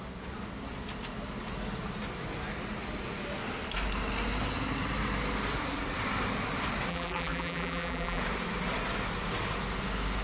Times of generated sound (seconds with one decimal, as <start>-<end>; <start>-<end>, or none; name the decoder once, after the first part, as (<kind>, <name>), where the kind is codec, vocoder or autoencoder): 6.9-8.2 (vocoder, BigVGAN v2)